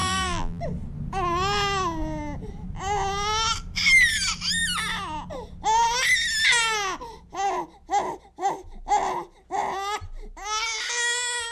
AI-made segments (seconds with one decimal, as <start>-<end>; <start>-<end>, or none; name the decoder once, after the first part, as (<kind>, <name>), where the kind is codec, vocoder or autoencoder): 0.0-0.6 (vocoder, BigVGAN v2)